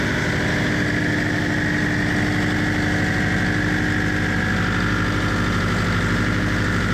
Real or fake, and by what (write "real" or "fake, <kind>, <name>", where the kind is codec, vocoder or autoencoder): real